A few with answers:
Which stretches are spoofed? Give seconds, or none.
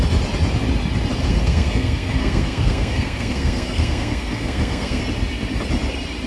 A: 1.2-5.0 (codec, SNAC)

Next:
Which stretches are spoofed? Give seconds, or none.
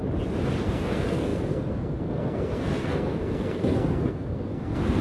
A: 0.6-5.0 (codec, SNAC)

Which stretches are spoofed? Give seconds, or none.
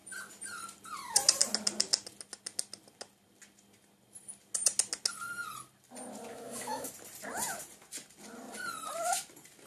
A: 6.3-6.9 (autoencoder, DAC-VAE)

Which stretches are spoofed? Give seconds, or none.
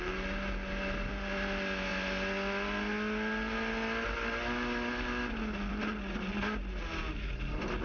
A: none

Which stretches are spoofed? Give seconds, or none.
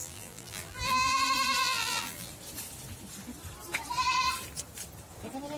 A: 0.0-1.2 (vocoder, BigVGAN v2); 1.6-2.3